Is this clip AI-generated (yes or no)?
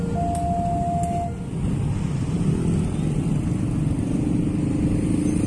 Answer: no